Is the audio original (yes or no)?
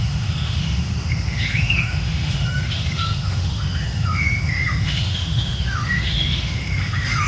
no